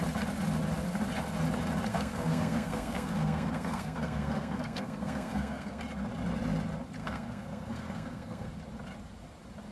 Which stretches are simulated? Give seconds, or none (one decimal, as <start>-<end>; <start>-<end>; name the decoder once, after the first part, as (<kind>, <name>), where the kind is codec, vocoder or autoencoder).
1.9-5.8 (codec, SNAC); 7.0-8.5